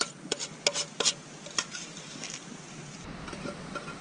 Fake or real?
real